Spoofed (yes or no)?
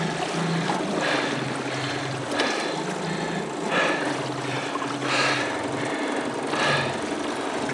no